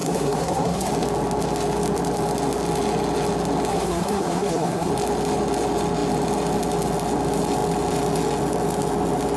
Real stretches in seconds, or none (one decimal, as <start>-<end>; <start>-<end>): 0.9-3.7; 4.9-9.4